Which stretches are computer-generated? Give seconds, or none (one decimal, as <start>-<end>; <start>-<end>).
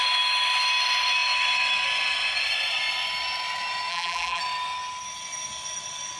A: 3.9-4.4